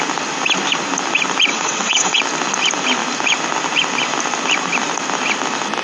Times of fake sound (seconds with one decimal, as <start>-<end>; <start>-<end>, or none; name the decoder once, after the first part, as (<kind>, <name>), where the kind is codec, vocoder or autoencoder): 1.5-2.2 (vocoder, WaveNeXt)